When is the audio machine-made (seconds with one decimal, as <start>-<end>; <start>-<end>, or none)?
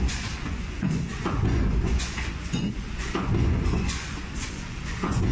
0.0-5.3